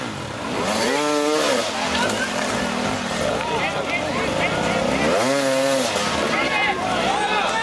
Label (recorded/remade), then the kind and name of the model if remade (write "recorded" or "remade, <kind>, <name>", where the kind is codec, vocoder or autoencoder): recorded